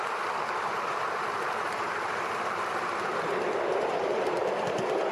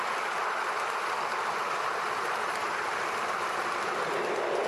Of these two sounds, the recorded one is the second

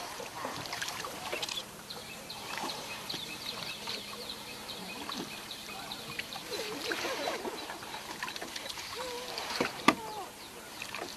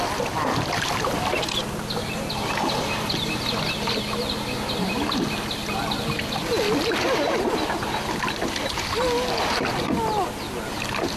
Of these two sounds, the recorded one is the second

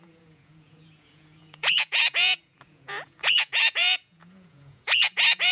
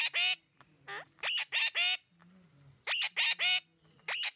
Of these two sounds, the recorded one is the second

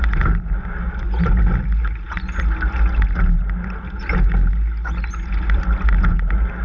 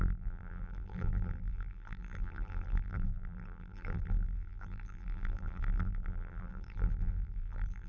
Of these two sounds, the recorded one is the first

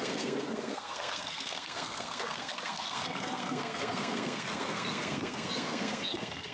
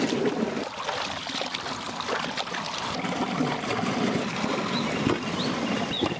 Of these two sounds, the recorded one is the second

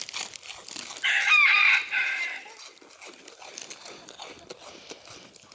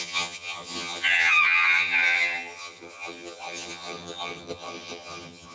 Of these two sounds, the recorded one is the first